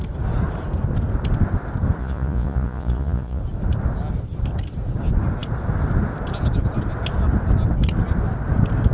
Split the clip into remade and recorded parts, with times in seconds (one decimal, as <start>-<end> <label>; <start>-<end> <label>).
0.0-2.0 recorded; 2.0-3.4 remade; 3.4-8.9 recorded